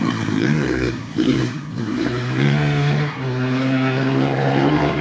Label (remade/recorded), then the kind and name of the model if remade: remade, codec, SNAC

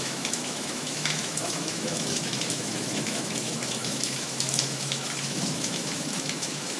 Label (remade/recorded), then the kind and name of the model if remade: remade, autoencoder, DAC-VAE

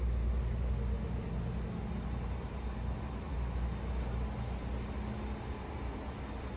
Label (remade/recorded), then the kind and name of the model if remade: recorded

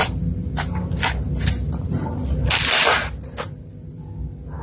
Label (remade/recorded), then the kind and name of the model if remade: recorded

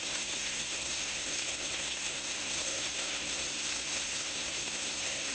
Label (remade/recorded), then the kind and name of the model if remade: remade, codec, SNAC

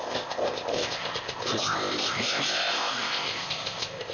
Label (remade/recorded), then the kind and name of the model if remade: remade, codec, ZipCodec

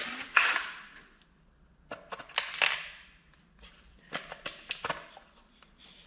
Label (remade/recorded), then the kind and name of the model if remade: recorded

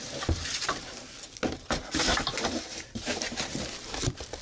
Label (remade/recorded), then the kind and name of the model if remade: recorded